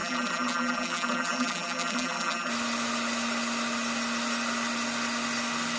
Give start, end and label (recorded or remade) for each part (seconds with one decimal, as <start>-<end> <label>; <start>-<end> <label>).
0.0-2.5 remade; 2.5-5.8 recorded